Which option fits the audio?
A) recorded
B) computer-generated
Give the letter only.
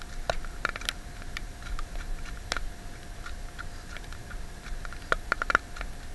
A